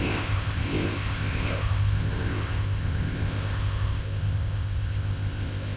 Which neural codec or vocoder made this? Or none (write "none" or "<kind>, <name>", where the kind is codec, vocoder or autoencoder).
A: codec, ZipCodec